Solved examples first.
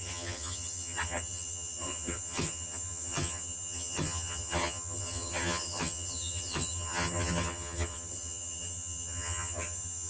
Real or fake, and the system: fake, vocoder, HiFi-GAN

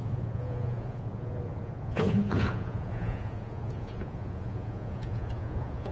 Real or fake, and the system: fake, vocoder, Vocos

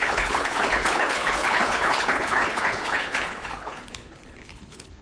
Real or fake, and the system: fake, codec, HILCodec